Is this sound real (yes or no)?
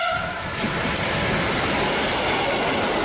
yes